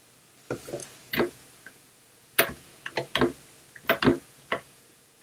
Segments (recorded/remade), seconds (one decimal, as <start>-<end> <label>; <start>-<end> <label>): 0.0-0.8 recorded; 0.8-2.8 remade; 2.8-4.1 recorded; 4.1-5.2 remade